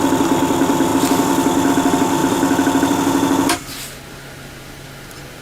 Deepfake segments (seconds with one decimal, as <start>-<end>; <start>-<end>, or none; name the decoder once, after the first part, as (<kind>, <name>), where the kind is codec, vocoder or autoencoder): none